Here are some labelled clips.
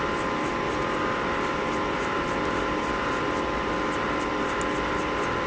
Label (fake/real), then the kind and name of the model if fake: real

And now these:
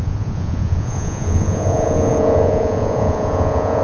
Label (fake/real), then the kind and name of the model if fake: fake, vocoder, Vocos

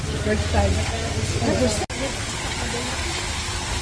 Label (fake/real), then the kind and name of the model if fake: real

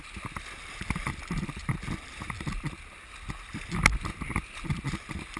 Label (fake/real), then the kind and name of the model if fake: real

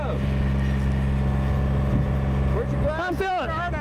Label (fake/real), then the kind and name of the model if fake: real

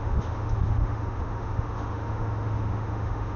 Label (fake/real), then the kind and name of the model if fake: fake, autoencoder, DAC-VAE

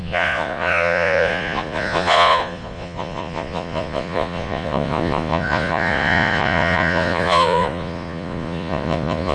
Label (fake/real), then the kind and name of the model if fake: fake, vocoder, Vocos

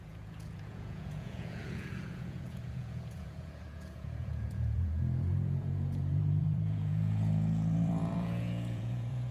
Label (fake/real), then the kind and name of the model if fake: fake, vocoder, Vocos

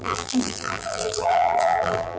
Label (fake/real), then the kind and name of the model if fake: fake, vocoder, BigVGAN v2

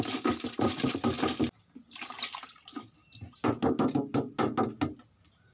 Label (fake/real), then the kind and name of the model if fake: real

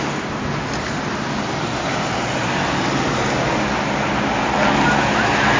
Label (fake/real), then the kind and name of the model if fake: real